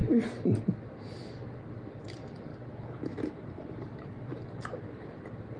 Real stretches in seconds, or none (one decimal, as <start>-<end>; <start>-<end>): 0.6-2.5